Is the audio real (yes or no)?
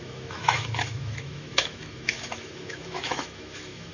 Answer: no